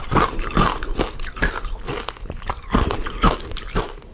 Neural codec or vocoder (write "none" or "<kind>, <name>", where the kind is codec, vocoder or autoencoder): none